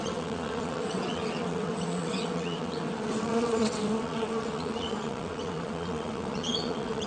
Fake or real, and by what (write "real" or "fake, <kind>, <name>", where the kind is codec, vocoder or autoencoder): fake, vocoder, WaveNeXt